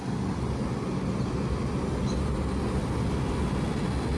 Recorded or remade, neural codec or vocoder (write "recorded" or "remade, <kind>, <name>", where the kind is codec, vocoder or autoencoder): recorded